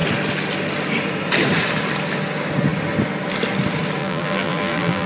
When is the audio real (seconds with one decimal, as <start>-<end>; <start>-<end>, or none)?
0.0-4.0